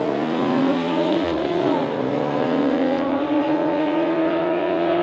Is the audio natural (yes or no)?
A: no